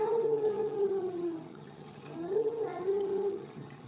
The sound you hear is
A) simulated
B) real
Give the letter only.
A